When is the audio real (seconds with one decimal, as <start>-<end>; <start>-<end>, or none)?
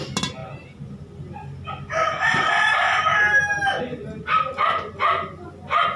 0.0-6.0